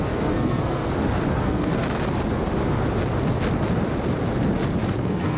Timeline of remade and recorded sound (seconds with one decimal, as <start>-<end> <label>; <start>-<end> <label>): 0.0-0.8 remade; 0.8-1.3 recorded; 1.3-1.8 remade; 1.8-5.0 recorded; 5.0-5.4 remade